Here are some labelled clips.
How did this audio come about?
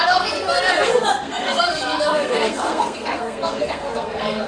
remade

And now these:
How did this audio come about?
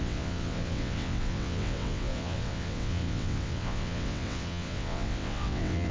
remade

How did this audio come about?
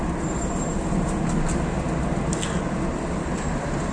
recorded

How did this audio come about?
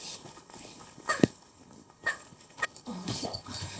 remade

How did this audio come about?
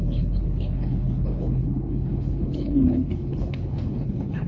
remade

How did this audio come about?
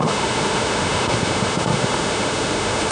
remade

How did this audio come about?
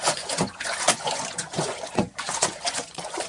remade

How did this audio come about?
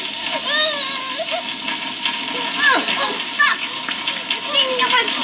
recorded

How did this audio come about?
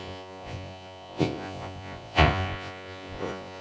remade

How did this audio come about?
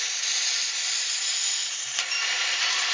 recorded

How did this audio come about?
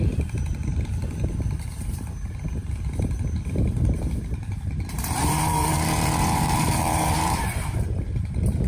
remade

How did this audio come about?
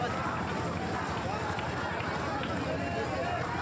recorded